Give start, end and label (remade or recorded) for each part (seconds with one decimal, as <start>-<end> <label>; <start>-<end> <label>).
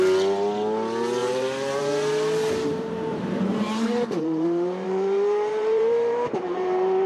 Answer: 0.0-1.2 recorded; 1.2-1.8 remade; 1.8-2.7 recorded; 2.7-7.1 remade